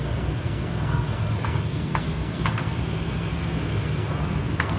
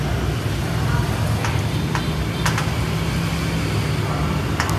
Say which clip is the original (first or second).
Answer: second